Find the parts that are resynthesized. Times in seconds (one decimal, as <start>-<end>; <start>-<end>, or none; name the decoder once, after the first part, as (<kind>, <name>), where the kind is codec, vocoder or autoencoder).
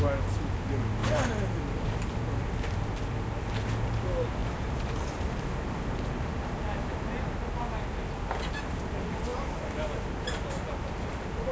9.3-10.0 (vocoder, BigVGAN v2)